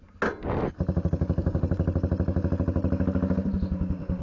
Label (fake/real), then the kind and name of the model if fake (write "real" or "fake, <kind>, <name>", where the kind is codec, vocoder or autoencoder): real